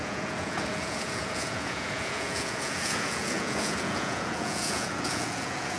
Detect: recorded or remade remade